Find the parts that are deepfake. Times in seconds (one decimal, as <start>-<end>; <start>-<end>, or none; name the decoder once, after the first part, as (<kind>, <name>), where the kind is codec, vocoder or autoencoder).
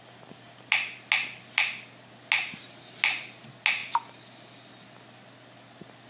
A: none